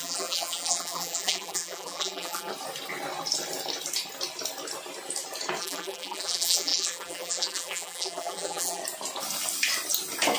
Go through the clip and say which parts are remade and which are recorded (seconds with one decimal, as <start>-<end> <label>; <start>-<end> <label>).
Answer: 0.0-2.5 remade; 2.5-5.6 recorded; 5.6-8.8 remade; 8.8-10.4 recorded